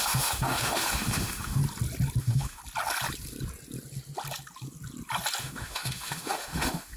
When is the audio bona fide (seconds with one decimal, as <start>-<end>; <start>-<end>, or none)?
1.6-2.2; 2.6-5.4